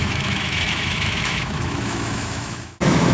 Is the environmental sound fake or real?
fake